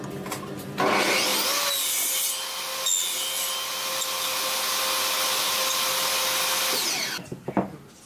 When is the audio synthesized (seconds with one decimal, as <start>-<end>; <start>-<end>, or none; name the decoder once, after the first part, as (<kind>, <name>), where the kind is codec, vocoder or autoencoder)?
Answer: none

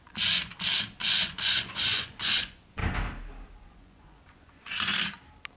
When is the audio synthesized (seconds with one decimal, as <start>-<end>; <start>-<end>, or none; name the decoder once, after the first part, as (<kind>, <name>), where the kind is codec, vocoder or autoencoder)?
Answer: 0.0-0.5 (vocoder, Vocos); 1.0-2.8; 3.6-4.9